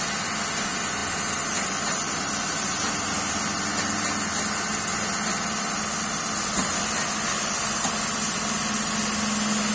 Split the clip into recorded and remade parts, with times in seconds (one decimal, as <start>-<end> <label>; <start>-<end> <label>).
0.0-9.7 recorded